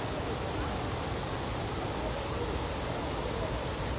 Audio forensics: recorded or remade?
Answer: recorded